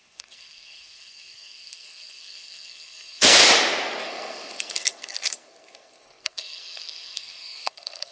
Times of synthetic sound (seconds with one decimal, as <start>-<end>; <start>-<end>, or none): 0.0-3.4; 4.0-8.1